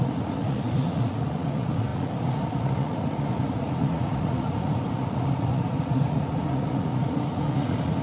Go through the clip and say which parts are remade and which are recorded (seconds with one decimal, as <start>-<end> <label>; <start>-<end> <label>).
0.0-8.0 remade